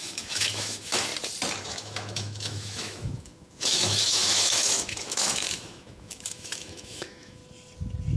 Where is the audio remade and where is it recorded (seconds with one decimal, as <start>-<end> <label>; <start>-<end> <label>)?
0.0-1.1 remade; 1.1-1.6 recorded; 1.6-7.4 remade; 7.4-8.2 recorded